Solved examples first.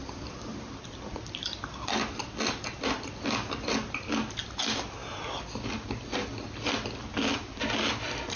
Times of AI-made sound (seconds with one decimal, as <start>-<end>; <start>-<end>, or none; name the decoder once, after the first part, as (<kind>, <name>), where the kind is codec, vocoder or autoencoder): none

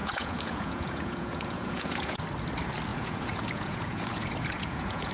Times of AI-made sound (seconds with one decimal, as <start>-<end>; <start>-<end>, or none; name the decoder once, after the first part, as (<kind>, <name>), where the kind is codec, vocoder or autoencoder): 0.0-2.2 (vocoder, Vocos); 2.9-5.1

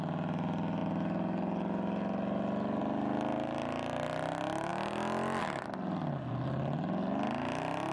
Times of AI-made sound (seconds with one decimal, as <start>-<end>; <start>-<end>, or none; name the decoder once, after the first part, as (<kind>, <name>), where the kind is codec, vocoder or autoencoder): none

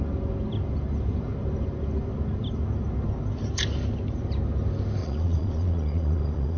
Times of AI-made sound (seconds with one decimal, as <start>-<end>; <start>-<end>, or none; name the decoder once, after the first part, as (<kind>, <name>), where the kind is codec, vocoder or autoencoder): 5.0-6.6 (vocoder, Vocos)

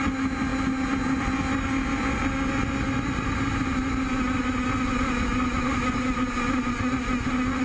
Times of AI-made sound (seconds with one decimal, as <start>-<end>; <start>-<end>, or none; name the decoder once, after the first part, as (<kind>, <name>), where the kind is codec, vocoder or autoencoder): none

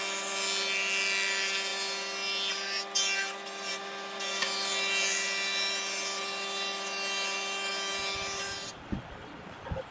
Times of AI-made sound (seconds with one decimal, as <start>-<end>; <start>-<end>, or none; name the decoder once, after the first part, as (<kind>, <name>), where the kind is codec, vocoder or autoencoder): none